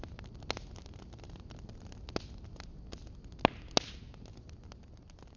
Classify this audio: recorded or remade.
recorded